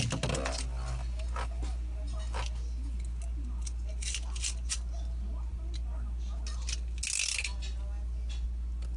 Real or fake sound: real